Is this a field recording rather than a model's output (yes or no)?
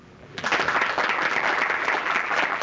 no